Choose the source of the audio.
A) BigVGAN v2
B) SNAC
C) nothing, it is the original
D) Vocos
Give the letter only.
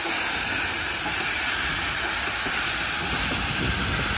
C